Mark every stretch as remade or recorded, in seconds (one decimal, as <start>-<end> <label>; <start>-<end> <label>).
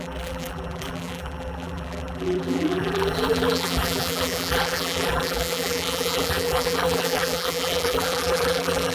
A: 0.0-8.9 remade